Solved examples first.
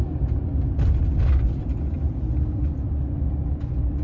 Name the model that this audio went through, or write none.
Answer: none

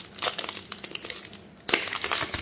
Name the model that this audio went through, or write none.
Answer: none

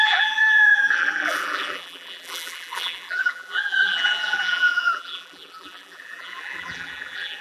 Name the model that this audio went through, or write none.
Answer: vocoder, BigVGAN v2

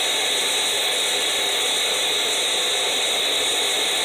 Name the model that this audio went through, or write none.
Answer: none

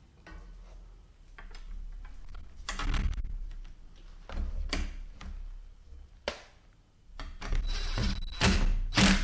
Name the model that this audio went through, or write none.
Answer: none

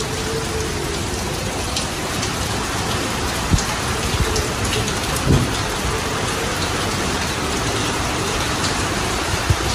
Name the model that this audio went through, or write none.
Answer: vocoder, BigVGAN v2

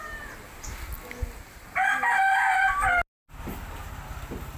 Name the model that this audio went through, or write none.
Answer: none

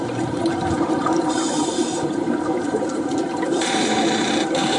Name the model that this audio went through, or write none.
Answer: vocoder, BigVGAN v2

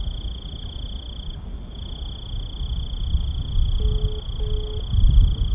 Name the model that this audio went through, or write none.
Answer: none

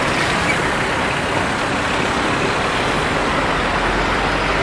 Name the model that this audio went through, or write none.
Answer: none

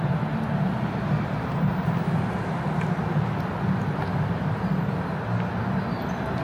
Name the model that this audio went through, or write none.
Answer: none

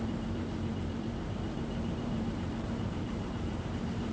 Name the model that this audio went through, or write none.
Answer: vocoder, BigVGAN v2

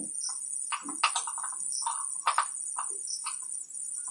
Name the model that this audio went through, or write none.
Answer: none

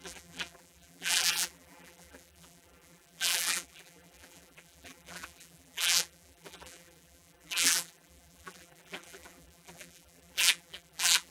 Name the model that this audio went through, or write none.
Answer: vocoder, BigVGAN v2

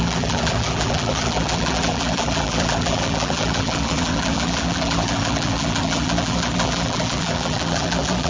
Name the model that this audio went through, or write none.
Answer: vocoder, BigVGAN v2